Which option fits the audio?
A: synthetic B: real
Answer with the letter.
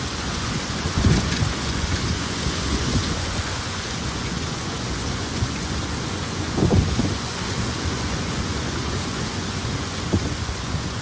A